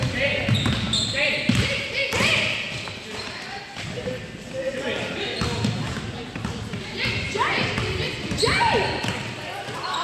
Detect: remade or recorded recorded